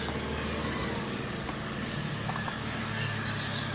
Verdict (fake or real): fake